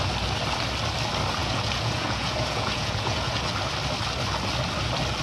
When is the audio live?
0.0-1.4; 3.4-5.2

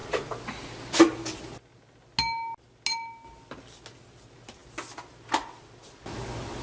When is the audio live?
0.0-6.6

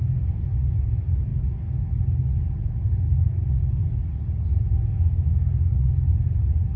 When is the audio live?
0.0-6.8

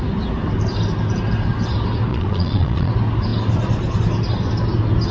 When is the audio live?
0.0-2.1; 2.9-5.1

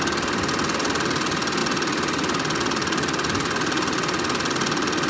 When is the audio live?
0.0-5.1